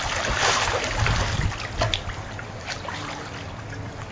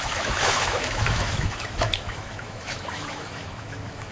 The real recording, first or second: first